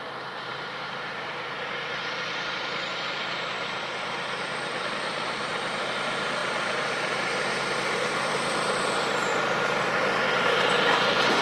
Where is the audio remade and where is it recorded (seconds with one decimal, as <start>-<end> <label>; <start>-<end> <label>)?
0.0-9.3 remade; 9.3-10.3 recorded; 10.3-11.4 remade